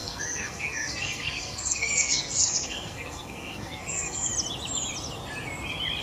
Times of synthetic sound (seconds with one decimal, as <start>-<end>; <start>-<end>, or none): 0.0-4.3